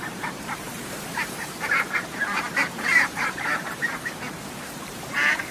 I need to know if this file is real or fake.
fake